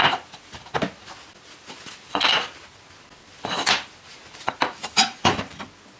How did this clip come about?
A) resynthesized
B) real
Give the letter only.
B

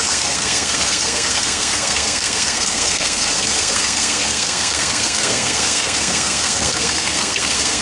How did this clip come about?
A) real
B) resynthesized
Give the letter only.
B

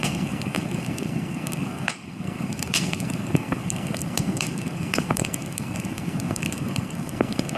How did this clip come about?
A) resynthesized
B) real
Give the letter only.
A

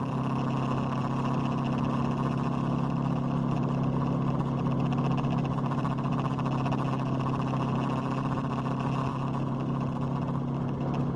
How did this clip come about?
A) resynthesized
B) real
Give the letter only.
B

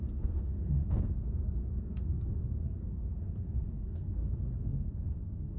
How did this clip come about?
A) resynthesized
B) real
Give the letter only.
A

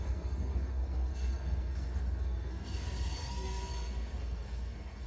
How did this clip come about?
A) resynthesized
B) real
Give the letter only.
A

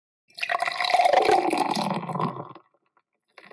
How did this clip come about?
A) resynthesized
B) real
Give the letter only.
B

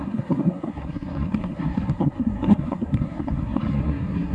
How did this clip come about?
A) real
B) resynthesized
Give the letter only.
B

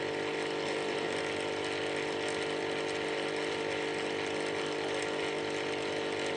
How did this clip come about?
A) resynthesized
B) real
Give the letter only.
B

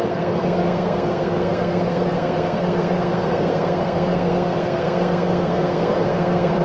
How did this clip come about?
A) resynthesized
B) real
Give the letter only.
A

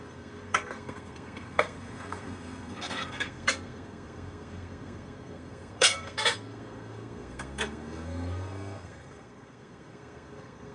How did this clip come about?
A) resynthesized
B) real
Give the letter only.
A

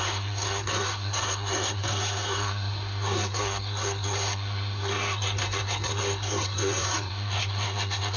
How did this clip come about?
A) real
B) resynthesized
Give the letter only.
B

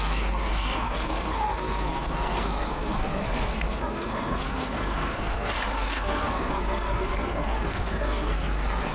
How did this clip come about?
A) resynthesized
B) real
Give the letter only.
A